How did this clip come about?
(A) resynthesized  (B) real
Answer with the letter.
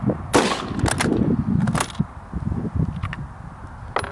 B